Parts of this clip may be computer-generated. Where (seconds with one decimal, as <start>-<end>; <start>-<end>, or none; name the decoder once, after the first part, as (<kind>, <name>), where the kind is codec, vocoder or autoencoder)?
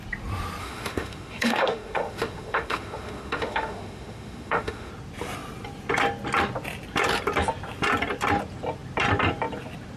0.6-4.9 (autoencoder, DAC-VAE)